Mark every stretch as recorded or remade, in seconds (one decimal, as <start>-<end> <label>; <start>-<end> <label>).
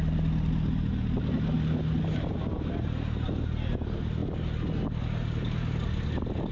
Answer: 0.0-6.5 recorded